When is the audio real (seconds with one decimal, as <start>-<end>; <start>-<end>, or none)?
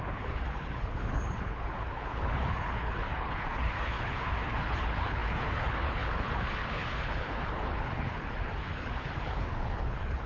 none